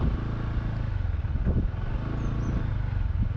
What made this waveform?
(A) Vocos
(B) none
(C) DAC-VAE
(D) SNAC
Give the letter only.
B